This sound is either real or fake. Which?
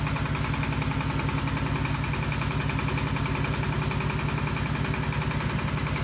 real